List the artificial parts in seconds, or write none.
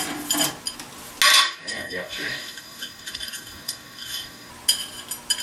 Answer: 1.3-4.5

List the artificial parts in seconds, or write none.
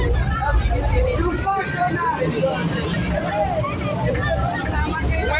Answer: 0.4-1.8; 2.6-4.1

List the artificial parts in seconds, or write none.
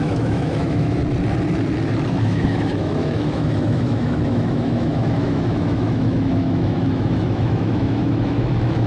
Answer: 0.0-1.0; 2.1-8.9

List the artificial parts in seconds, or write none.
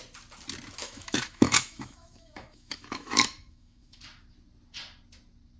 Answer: 0.8-4.0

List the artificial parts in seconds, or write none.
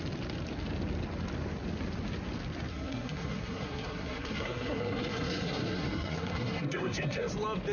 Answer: 2.7-7.3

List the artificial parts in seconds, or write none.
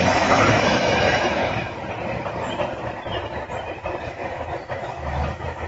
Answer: 0.0-1.4; 4.0-5.7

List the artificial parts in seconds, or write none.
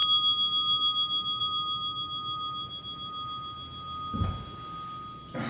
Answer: none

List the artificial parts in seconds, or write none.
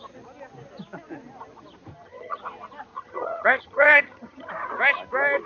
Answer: 1.9-2.4; 2.9-4.5